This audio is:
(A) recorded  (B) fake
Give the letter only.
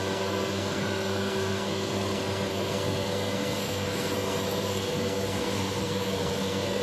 B